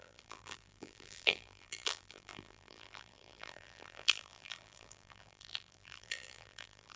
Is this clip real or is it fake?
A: fake